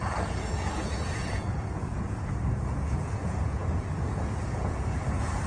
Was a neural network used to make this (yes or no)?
yes